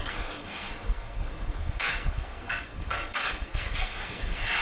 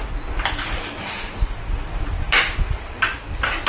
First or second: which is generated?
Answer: first